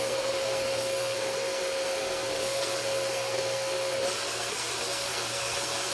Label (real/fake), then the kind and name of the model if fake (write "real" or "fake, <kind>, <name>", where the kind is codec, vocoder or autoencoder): fake, codec, SNAC